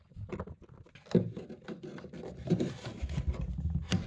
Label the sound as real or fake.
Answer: real